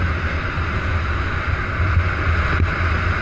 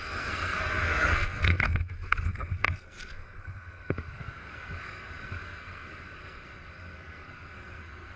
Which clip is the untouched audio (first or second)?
first